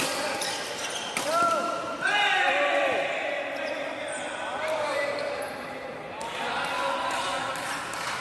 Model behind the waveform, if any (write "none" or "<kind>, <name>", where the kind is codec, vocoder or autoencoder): vocoder, BigVGAN v2